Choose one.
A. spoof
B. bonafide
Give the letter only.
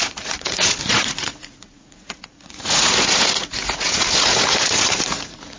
A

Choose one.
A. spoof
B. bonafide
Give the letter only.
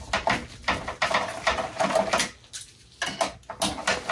B